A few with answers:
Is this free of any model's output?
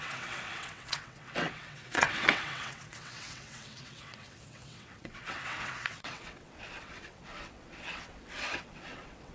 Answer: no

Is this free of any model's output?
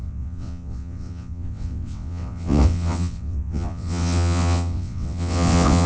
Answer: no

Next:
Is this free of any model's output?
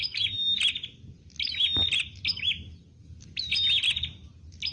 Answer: yes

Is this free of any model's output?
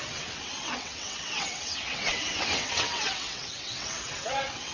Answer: no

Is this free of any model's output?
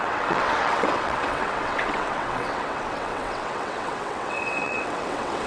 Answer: no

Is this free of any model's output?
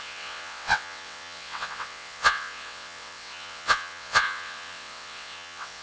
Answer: no